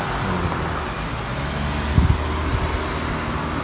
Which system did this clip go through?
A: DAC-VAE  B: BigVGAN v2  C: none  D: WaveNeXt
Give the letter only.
C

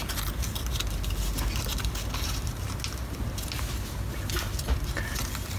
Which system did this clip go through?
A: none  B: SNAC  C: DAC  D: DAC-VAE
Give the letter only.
A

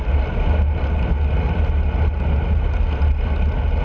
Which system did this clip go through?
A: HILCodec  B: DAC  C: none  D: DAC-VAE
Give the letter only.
C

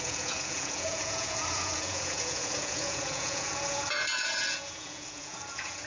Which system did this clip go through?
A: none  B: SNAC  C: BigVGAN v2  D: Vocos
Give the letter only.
D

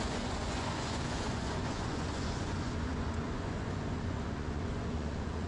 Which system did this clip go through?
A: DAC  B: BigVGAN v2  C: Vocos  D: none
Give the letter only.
C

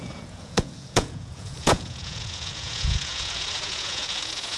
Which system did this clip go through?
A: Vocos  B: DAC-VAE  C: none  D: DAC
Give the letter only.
A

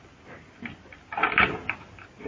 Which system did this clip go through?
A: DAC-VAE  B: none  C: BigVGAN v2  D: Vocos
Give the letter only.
B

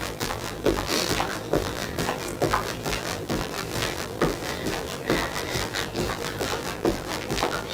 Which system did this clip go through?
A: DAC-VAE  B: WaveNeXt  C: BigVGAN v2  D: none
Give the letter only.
C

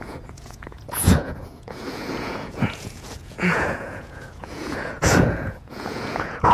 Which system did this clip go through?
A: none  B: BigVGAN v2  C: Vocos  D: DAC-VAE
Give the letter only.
C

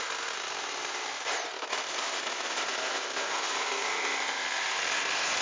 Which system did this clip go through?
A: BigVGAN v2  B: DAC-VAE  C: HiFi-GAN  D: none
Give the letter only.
D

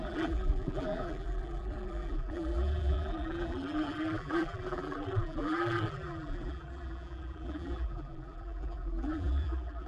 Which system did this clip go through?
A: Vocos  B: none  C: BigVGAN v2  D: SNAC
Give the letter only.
C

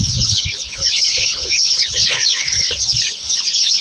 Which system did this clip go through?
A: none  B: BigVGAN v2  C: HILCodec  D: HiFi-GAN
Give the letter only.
C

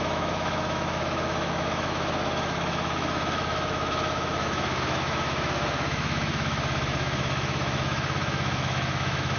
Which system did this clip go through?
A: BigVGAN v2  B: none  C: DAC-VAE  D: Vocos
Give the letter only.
C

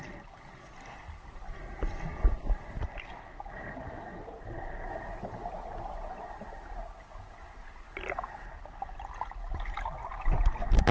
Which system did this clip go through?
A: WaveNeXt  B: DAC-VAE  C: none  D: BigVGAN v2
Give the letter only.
C